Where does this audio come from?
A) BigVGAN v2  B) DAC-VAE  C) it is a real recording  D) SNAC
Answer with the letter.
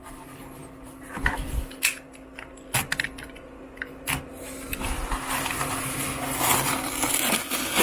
C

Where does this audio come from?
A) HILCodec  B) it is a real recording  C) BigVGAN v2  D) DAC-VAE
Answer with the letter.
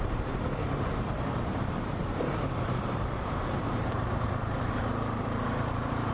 C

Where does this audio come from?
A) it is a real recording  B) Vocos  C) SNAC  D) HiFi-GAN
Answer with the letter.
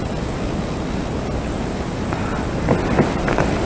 A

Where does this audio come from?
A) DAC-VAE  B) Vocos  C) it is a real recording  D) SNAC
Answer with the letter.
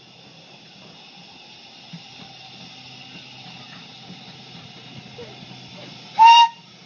C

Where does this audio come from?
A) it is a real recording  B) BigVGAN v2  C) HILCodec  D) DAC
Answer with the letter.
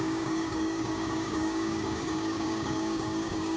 D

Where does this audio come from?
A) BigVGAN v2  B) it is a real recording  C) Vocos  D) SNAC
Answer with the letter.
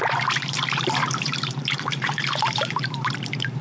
A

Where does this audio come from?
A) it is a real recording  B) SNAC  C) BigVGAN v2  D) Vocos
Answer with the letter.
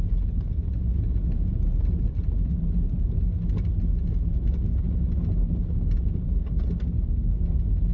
A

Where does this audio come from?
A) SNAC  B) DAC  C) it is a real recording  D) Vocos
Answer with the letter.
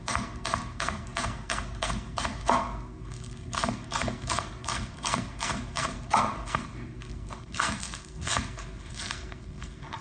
A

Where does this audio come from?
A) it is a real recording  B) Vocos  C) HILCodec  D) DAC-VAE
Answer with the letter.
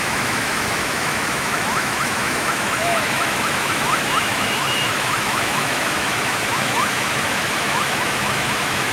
D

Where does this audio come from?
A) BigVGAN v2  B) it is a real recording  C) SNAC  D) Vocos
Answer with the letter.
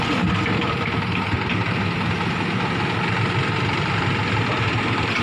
A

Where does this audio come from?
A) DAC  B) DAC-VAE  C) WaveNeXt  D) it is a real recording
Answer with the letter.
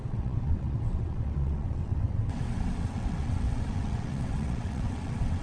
C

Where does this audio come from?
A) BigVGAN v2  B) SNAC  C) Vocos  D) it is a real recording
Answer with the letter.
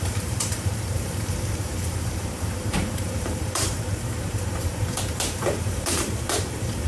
A